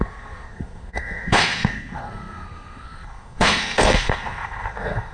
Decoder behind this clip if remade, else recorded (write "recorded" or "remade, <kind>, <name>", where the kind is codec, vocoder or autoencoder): remade, codec, SNAC